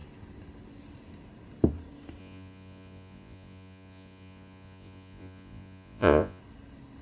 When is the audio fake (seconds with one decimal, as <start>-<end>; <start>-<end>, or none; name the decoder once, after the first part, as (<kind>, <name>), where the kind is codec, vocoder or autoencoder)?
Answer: 2.2-6.4 (vocoder, Vocos)